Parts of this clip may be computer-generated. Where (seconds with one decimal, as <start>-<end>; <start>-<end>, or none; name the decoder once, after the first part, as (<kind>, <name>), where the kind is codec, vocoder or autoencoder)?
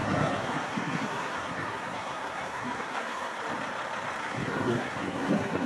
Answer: 0.0-3.4 (codec, SNAC); 4.2-5.7